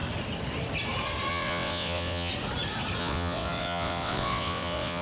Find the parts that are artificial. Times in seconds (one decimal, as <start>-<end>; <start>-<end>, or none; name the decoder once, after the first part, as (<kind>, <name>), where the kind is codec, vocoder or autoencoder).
1.3-2.3 (vocoder, WaveNeXt); 3.0-5.0